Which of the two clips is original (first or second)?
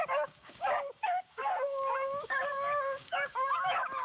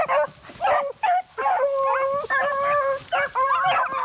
second